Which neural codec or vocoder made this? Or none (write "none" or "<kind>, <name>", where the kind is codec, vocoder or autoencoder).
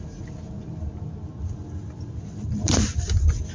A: none